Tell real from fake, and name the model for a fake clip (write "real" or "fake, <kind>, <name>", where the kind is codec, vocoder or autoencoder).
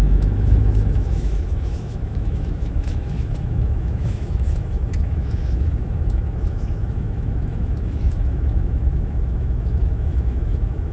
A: fake, autoencoder, DAC-VAE